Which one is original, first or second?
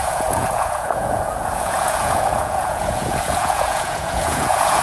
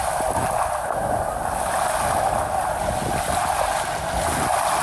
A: second